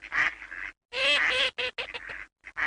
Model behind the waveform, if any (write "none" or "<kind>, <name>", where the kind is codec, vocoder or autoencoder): none